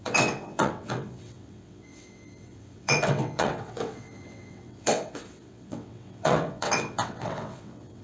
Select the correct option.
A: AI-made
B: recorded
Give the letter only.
A